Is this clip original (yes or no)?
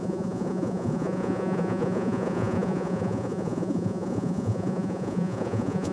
no